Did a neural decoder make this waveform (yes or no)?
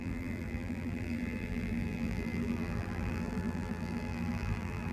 yes